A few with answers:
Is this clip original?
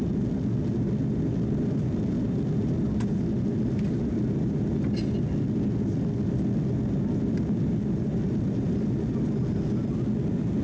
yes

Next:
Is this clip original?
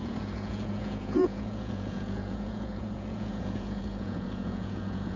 no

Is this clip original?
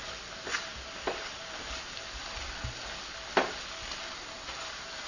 yes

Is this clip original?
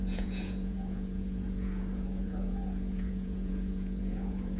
no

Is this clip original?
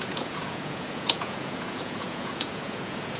no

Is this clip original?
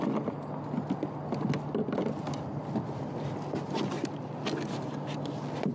yes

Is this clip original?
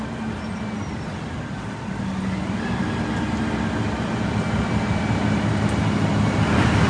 yes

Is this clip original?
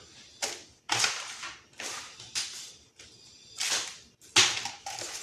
yes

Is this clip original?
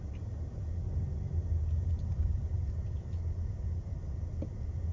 yes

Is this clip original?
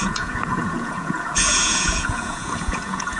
no